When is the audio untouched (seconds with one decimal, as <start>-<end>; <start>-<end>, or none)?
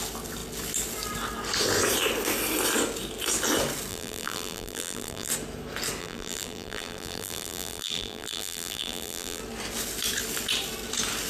0.0-3.9; 5.3-6.0; 9.4-11.3